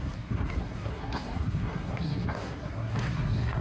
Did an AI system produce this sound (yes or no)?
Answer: yes